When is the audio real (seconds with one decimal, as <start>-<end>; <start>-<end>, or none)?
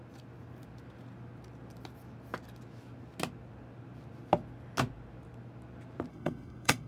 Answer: 0.0-6.1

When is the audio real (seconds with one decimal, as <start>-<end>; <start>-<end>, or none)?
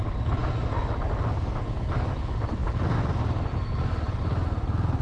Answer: 0.0-5.0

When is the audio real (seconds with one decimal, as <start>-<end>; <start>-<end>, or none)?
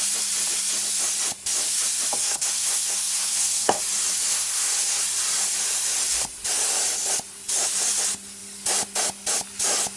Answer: 0.0-2.2; 3.8-4.3; 5.0-10.0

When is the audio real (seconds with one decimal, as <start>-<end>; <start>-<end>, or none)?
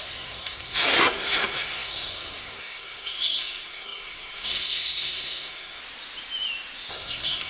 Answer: 5.8-6.9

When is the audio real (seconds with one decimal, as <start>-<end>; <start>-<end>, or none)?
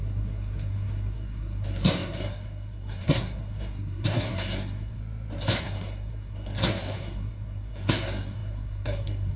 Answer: 5.0-5.6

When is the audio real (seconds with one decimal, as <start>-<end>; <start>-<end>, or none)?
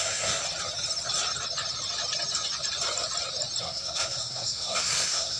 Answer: 0.4-3.6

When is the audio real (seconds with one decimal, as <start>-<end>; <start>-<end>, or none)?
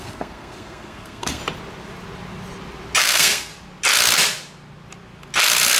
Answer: 1.4-3.0; 3.5-5.8